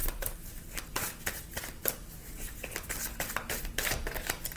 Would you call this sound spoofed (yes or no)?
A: no